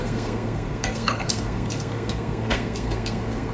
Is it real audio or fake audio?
fake